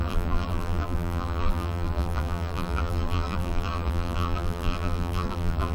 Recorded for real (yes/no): no